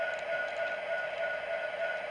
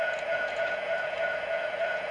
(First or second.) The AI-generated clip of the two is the second